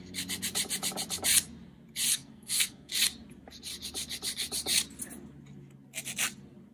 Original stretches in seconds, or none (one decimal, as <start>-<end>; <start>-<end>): 0.0-2.1; 2.9-6.7